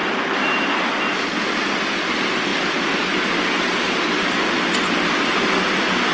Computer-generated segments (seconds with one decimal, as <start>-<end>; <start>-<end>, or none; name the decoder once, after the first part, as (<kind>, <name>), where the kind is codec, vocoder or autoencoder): none